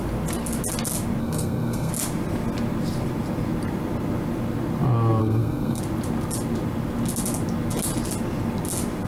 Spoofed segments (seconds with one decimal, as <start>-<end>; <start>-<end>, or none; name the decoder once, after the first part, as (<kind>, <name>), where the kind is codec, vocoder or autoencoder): 1.2-1.9 (codec, SNAC); 5.2-5.8